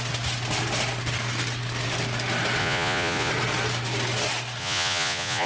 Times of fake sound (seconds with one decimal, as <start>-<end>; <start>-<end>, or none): 2.6-3.3; 4.6-5.5